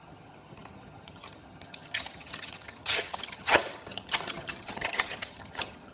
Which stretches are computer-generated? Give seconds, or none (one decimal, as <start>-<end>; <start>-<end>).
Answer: 0.0-5.9